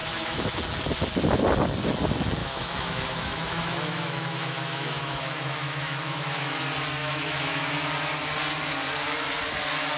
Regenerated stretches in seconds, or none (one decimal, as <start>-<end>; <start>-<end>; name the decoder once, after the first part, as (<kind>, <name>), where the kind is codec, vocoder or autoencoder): 0.0-0.6 (autoencoder, DAC-VAE); 2.4-6.6; 7.0-7.7